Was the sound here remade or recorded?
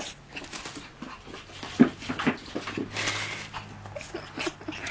recorded